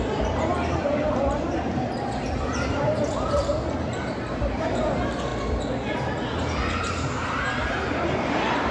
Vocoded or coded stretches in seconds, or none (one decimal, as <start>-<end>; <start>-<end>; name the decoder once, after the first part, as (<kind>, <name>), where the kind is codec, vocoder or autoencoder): 0.0-5.3 (vocoder, BigVGAN v2); 6.8-8.7